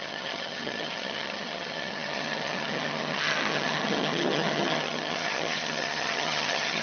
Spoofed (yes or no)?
yes